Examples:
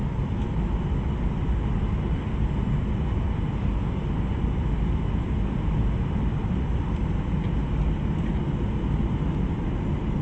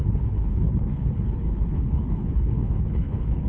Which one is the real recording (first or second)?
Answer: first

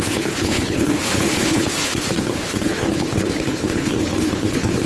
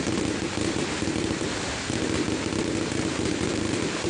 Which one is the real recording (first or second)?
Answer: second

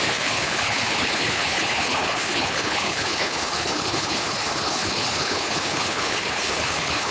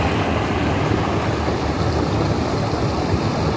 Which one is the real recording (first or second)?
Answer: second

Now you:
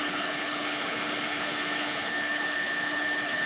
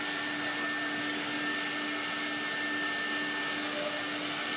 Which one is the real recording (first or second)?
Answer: second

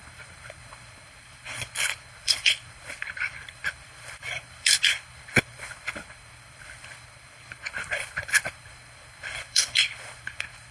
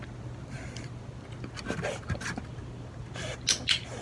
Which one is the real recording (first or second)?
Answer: second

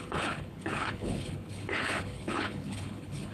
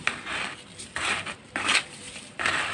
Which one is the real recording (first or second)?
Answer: second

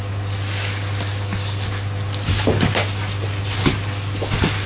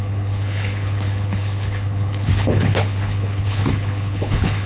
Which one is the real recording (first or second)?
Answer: first